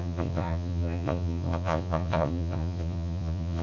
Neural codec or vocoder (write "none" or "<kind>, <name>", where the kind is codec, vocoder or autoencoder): vocoder, Vocos